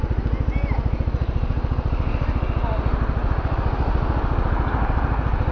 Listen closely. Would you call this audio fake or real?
real